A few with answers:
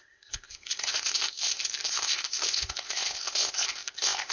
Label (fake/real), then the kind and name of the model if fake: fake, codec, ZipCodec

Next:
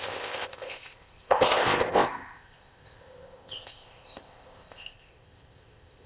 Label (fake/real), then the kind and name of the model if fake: fake, codec, ZipCodec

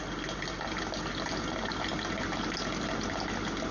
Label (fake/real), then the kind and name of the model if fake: real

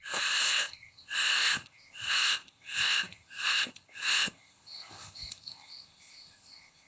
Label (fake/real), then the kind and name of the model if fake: fake, codec, ZipCodec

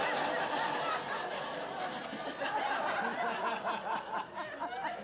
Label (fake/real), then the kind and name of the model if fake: real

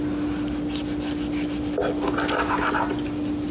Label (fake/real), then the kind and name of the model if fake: real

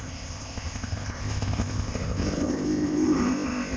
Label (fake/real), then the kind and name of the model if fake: fake, codec, ZipCodec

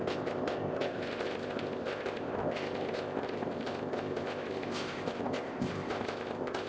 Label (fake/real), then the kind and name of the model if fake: fake, codec, ZipCodec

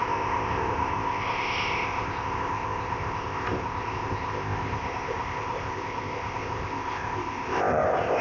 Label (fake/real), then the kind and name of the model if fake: fake, codec, ZipCodec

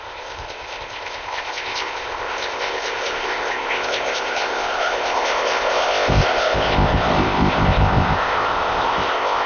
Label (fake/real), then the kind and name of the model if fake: fake, codec, ZipCodec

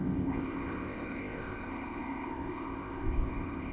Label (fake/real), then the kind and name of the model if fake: fake, codec, ZipCodec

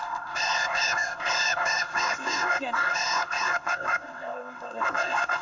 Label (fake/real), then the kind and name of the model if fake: fake, codec, ZipCodec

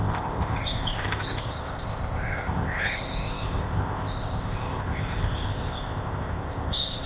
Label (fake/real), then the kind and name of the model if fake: fake, codec, ZipCodec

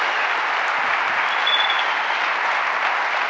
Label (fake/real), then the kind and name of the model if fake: real